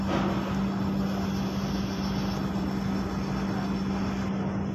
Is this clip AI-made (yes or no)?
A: no